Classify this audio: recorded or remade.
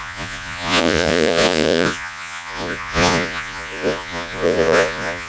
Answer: remade